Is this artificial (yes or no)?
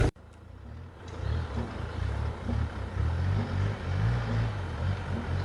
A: no